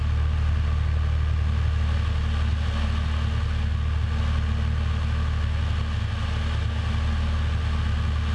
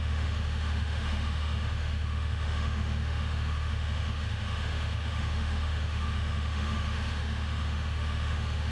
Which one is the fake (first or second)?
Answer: second